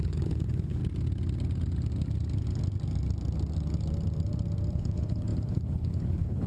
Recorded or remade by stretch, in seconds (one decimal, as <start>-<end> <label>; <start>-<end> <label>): 0.0-0.8 remade; 0.8-4.7 recorded; 4.7-6.5 remade